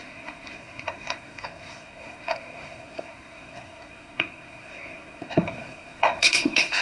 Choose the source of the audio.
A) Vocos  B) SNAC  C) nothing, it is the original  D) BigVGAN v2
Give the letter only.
B